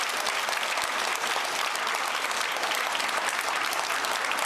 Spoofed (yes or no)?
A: no